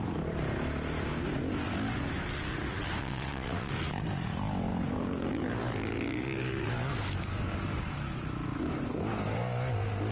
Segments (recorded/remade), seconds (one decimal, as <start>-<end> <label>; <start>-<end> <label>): 0.0-3.0 recorded; 3.0-3.7 remade; 3.7-10.1 recorded